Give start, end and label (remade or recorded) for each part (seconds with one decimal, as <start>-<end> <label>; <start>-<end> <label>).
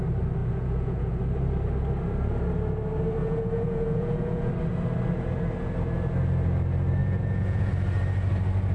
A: 0.0-0.4 recorded; 0.4-1.2 remade; 1.2-3.2 recorded; 3.2-4.5 remade; 4.5-7.0 recorded; 7.0-7.7 remade; 7.7-8.7 recorded